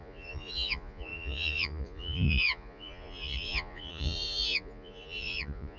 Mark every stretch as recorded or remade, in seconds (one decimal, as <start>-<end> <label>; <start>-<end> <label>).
0.0-5.8 remade

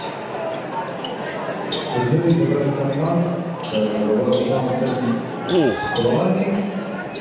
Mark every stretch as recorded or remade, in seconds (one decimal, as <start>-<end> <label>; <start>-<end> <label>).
0.0-3.6 recorded; 3.6-4.6 remade; 4.6-7.2 recorded

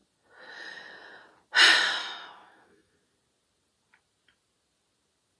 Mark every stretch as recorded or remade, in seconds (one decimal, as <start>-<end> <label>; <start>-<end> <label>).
0.0-2.0 recorded; 2.0-2.9 remade; 2.9-5.4 recorded

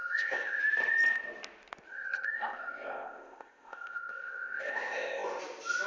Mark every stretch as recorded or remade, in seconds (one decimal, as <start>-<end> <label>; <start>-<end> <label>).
0.0-0.6 remade; 0.6-1.9 recorded; 1.9-5.4 remade; 5.4-5.9 recorded

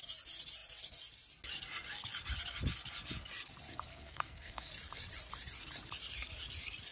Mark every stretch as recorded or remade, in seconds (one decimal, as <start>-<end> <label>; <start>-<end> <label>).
0.0-3.9 recorded; 3.9-4.7 remade; 4.7-6.9 recorded

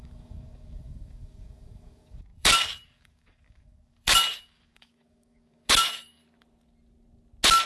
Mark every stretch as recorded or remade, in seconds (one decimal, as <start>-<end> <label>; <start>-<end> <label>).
0.0-6.2 remade; 6.2-7.7 recorded

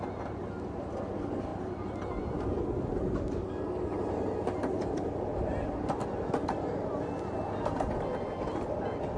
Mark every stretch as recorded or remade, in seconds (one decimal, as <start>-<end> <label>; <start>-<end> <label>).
0.0-9.2 recorded

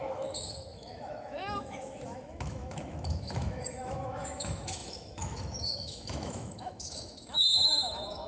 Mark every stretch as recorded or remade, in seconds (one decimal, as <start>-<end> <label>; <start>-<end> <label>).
0.0-8.3 remade